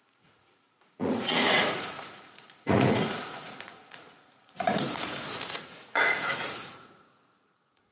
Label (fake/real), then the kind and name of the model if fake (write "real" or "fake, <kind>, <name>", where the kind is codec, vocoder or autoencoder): fake, vocoder, Vocos